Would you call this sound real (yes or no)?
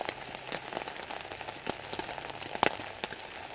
yes